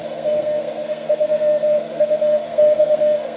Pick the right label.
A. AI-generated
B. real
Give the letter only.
A